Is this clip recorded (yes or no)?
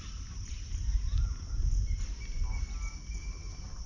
yes